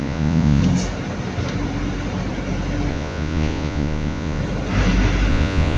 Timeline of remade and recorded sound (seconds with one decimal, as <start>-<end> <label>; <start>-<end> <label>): 0.0-0.6 remade; 0.6-2.9 recorded; 2.9-4.4 remade; 4.4-5.3 recorded; 5.3-5.8 remade